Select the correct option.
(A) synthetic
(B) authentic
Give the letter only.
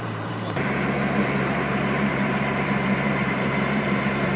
A